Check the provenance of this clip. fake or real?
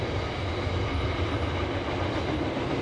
real